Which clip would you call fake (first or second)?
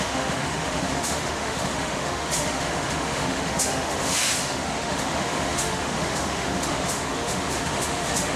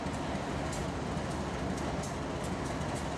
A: first